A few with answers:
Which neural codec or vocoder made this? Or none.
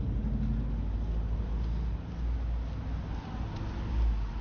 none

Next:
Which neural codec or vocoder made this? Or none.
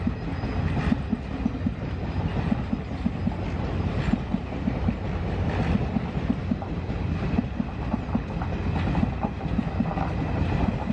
none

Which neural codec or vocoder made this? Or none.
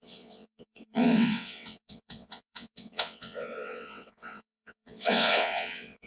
vocoder, WaveNeXt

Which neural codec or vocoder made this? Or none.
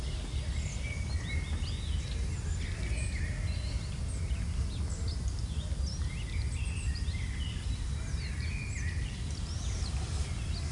none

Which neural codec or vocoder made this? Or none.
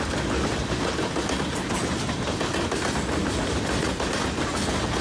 none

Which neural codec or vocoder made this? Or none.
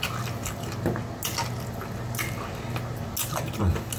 none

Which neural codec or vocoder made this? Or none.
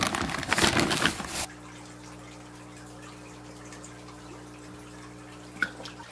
none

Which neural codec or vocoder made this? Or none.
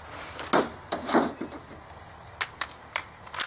none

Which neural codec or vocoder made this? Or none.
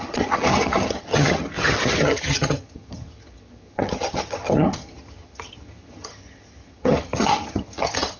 vocoder, HiFi-GAN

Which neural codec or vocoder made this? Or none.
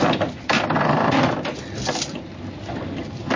vocoder, BigVGAN v2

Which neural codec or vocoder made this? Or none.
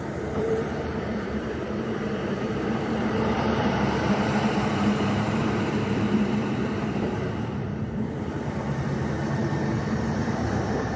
vocoder, BigVGAN v2